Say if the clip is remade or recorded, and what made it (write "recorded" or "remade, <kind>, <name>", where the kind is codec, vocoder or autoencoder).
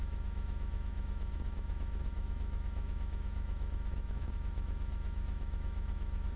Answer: remade, autoencoder, DAC-VAE